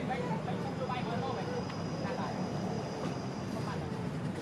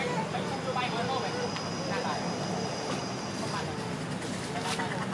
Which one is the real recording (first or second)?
second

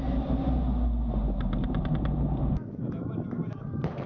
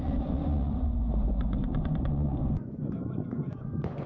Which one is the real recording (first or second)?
first